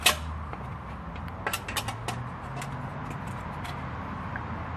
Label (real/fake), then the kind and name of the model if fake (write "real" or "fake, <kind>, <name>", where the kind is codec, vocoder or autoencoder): real